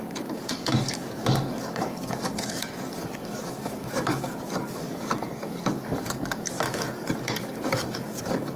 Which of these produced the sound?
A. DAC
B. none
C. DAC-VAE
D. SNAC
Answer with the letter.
A